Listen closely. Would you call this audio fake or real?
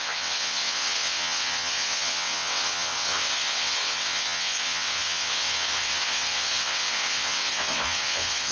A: fake